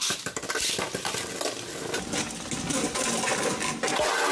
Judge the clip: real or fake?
real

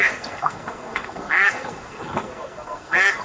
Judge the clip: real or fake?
fake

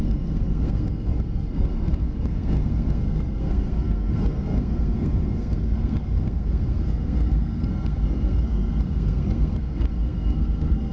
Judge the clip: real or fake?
fake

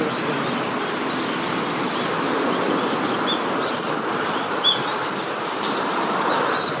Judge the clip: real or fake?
real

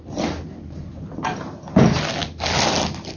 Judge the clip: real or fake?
real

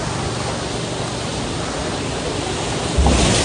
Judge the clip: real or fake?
real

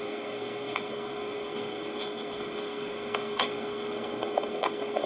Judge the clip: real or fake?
fake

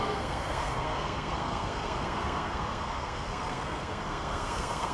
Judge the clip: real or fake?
fake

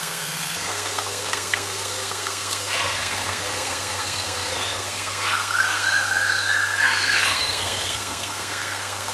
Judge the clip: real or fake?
fake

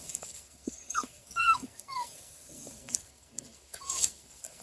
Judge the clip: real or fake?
fake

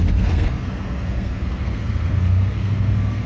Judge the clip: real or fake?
fake